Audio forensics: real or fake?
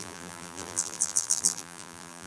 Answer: fake